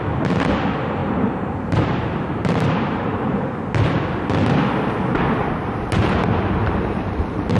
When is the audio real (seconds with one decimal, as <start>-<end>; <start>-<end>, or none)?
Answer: 0.0-1.0; 3.5-6.6

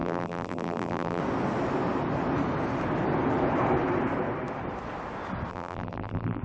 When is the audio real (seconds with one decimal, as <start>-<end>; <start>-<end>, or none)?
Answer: 1.2-5.5

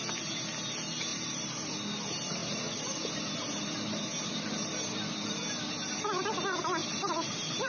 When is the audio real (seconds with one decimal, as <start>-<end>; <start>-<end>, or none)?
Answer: 0.0-1.1; 1.7-2.4; 3.3-6.8

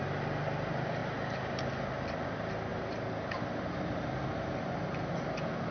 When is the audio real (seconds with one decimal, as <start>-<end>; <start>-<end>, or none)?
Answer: 0.0-1.0; 1.7-2.7; 4.1-5.7

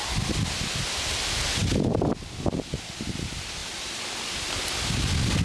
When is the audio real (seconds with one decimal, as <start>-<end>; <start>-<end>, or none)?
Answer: 0.0-3.6

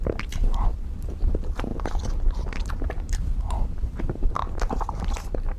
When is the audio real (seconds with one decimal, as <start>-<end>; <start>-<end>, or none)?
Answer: 1.7-2.7

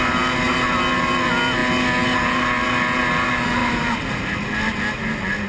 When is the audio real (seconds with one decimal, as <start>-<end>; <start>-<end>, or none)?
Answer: 0.0-3.6; 4.7-5.5

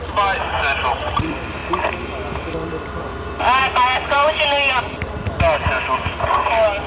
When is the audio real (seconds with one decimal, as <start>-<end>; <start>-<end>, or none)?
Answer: 1.6-2.4; 3.1-3.6; 4.2-5.8